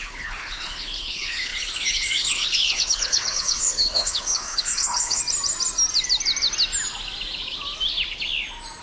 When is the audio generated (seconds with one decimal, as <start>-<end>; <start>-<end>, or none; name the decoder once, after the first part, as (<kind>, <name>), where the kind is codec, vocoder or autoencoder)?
0.0-5.2 (codec, HILCodec)